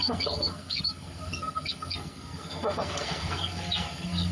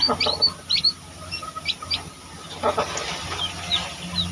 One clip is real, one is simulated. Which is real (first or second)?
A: second